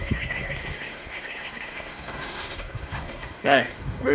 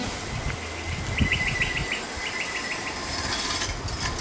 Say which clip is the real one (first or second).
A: second